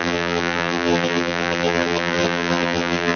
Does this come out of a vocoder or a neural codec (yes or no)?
yes